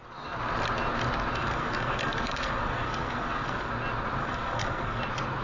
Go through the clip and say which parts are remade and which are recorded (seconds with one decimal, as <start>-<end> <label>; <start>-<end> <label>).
0.0-1.4 recorded; 1.4-3.7 remade; 3.7-4.2 recorded; 4.2-5.0 remade; 5.0-5.4 recorded